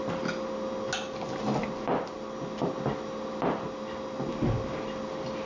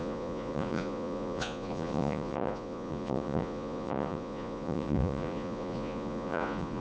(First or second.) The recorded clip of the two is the first